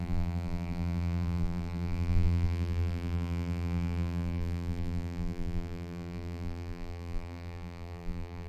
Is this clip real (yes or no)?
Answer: no